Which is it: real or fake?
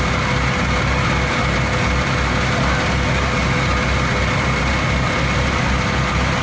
real